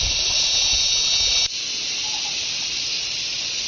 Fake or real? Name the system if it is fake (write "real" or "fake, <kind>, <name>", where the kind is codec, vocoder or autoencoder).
real